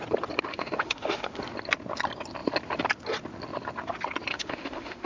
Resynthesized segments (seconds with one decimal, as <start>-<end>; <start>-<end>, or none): 0.5-1.4; 4.3-5.1